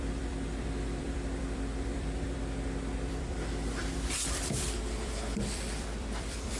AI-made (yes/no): yes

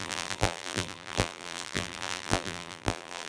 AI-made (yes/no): yes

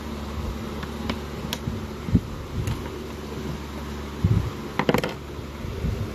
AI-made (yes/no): no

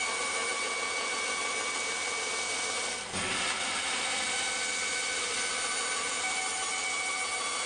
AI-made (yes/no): no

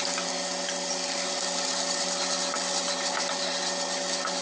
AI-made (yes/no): no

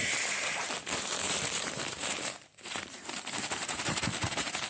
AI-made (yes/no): yes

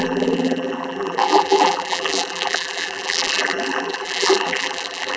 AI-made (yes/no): yes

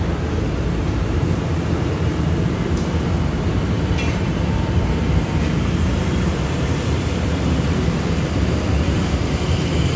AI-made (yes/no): yes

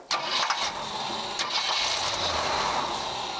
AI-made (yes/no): no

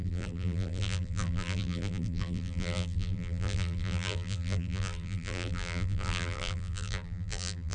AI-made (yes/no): yes